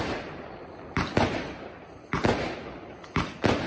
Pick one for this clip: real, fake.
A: real